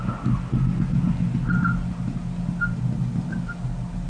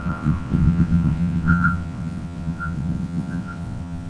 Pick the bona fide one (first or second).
first